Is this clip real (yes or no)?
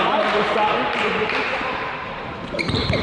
no